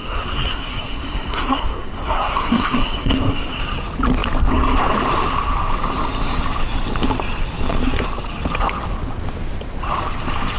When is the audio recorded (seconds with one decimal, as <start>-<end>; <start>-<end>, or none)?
3.6-10.6